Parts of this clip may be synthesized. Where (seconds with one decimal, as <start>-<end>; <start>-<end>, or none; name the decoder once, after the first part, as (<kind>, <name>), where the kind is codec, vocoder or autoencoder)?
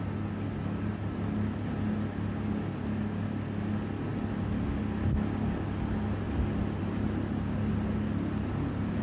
none